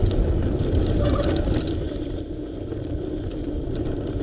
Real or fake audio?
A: real